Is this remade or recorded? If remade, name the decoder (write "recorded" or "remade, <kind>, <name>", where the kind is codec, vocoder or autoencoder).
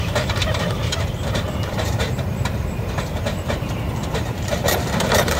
remade, vocoder, BigVGAN v2